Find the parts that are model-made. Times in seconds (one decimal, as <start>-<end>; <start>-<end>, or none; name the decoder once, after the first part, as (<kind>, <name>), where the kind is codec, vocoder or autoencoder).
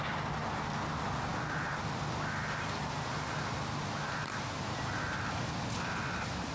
none